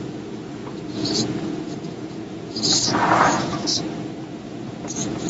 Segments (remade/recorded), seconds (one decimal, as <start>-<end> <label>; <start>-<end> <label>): 0.0-3.7 remade; 3.7-4.4 recorded; 4.4-5.3 remade

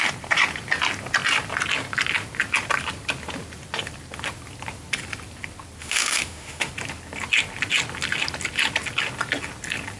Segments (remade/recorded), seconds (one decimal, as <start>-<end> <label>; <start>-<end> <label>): 0.0-5.8 recorded; 5.8-6.7 remade; 6.7-10.0 recorded

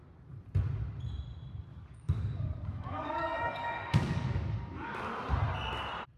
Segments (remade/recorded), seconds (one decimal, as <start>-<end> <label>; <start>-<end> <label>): 0.0-1.7 recorded; 1.7-5.1 remade; 5.1-6.2 recorded

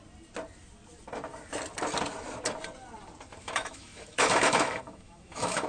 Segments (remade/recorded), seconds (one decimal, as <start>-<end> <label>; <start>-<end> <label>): 0.0-3.4 recorded; 3.4-5.7 remade

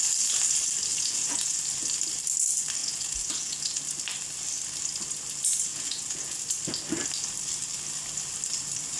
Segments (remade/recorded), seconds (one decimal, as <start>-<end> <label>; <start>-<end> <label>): 0.0-0.9 recorded; 0.9-1.6 remade; 1.6-2.8 recorded; 2.8-3.8 remade; 3.8-5.7 recorded; 5.7-6.4 remade; 6.4-9.0 recorded

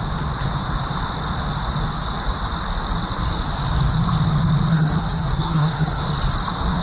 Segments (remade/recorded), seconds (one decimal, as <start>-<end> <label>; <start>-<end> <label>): 0.0-4.7 recorded; 4.7-6.0 remade; 6.0-6.8 recorded